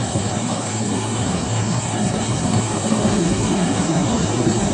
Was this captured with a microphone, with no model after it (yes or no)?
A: no